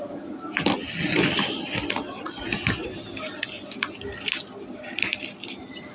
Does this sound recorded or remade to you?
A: recorded